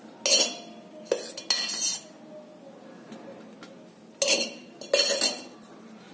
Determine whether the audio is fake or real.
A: real